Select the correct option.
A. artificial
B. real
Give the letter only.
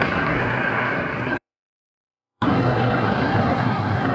A